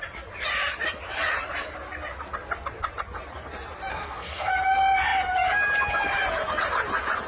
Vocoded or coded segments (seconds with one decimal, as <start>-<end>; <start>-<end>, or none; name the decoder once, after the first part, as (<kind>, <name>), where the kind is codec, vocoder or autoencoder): 3.9-4.5 (codec, SNAC)